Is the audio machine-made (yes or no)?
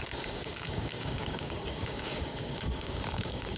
yes